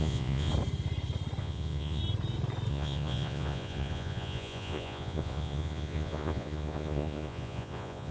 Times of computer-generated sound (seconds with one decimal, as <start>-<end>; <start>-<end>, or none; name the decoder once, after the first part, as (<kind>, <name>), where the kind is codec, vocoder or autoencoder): 0.0-0.5 (vocoder, Vocos); 1.4-2.0; 2.7-8.1